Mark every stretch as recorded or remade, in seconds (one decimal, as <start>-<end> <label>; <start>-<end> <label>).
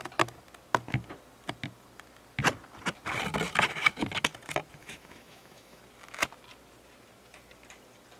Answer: 0.0-4.8 recorded; 4.8-5.8 remade; 5.8-8.2 recorded